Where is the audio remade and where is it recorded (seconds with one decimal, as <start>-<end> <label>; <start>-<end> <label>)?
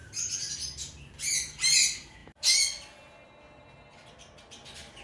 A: 0.0-5.0 recorded